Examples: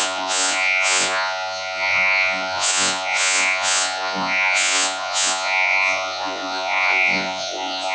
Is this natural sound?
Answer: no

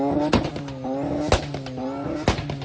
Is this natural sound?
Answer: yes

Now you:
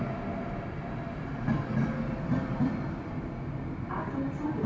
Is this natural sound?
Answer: yes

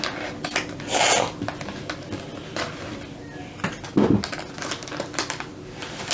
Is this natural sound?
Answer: yes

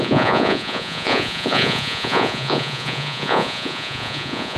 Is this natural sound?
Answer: no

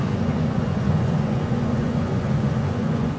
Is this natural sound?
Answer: no